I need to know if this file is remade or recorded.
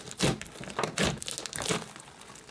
recorded